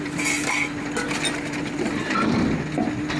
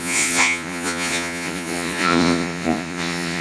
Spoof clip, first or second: second